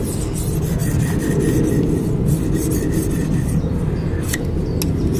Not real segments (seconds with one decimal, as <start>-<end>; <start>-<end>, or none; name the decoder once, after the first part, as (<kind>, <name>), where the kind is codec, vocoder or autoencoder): none